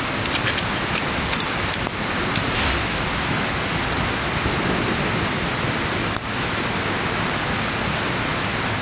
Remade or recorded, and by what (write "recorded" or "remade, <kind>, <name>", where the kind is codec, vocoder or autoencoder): recorded